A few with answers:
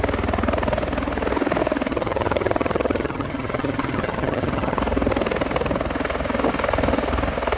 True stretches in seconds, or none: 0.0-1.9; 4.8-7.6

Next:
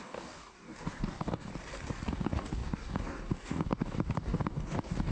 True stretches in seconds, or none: 1.5-2.1

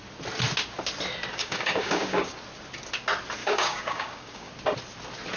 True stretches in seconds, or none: 0.0-1.3; 2.4-3.4; 4.5-5.4

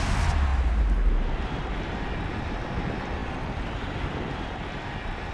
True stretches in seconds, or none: 0.0-5.3

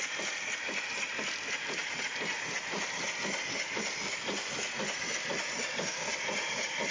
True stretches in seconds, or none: 0.0-6.9

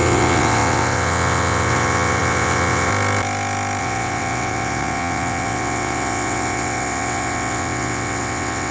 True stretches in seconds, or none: 2.9-3.8

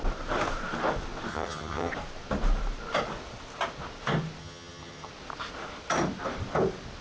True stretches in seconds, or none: 0.0-1.3; 1.9-4.4; 5.1-7.0

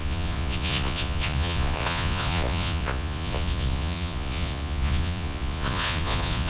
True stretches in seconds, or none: none